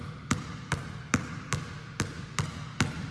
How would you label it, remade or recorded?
recorded